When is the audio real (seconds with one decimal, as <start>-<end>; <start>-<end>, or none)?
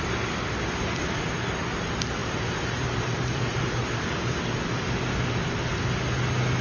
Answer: 0.0-2.2; 4.4-6.6